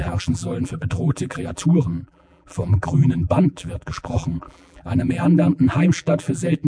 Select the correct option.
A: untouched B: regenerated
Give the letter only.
B